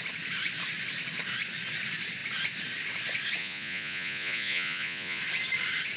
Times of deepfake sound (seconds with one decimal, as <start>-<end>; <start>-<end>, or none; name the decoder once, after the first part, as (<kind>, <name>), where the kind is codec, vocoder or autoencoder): 3.4-5.2 (vocoder, Vocos)